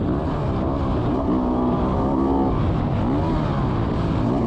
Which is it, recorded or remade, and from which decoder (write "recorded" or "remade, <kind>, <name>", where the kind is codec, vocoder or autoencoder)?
recorded